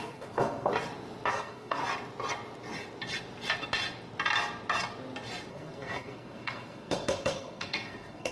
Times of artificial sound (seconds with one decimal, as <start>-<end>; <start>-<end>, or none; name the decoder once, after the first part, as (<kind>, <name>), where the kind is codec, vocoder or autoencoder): 0.0-0.7 (codec, SNAC); 1.3-1.8; 5.5-8.3